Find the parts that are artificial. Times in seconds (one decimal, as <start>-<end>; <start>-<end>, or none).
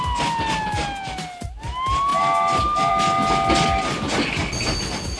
none